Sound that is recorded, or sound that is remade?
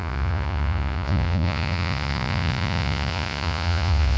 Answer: remade